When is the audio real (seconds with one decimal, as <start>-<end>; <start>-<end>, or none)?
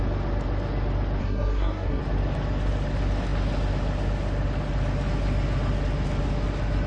0.0-1.2; 2.0-6.9